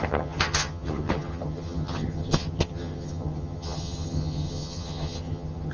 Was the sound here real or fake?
fake